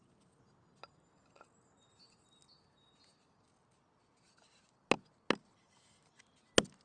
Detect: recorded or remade recorded